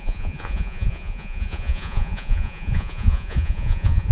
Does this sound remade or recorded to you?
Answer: remade